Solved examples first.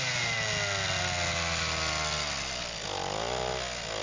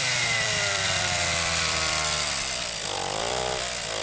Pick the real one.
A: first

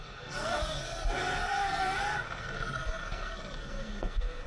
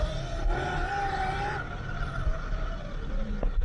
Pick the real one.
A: second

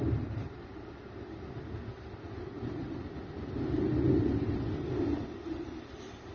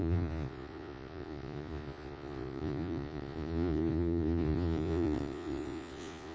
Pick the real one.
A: first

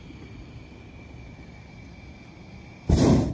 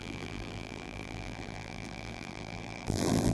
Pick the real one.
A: first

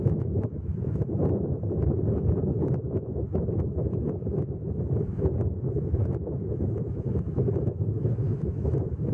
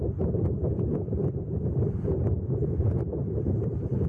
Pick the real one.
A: second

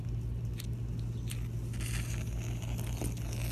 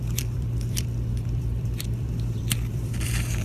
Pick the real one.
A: first